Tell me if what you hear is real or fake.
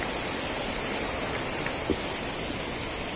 real